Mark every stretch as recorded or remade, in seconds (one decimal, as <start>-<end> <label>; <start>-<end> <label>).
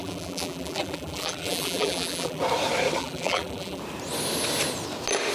0.0-2.4 remade; 2.4-3.0 recorded; 3.0-3.8 remade; 3.8-5.3 recorded